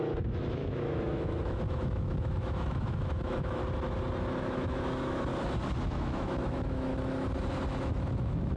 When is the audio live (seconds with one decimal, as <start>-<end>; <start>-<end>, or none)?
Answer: 3.6-4.4; 5.3-5.8; 6.9-7.8